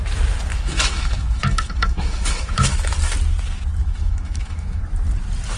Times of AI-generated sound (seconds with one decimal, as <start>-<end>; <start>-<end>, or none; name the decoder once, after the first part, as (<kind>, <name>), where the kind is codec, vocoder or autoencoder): 0.5-2.9 (autoencoder, DAC-VAE); 3.8-4.8